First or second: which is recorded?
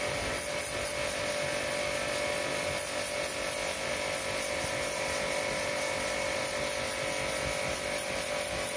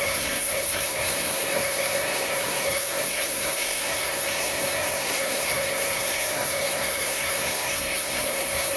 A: first